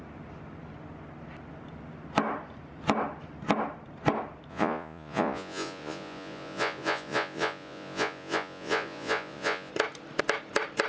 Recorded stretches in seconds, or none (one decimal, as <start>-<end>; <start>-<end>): 0.0-4.5; 9.7-10.9